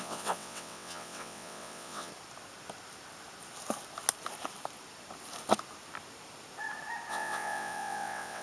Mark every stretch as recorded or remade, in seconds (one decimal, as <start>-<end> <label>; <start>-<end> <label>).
0.0-2.1 remade; 2.1-7.1 recorded; 7.1-8.4 remade